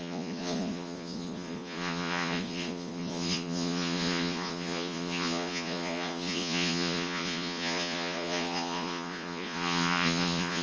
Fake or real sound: fake